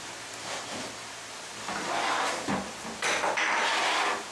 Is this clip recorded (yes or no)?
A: yes